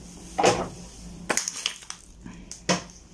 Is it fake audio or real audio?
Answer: real